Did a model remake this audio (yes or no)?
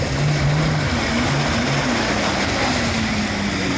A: no